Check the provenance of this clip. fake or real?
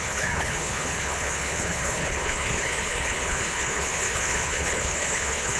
fake